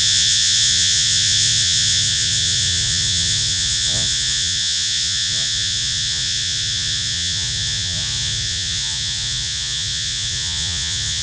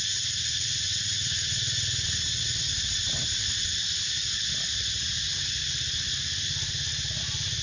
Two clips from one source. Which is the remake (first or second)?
first